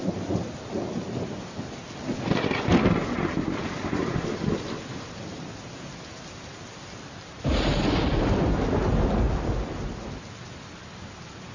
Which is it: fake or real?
real